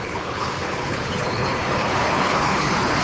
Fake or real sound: fake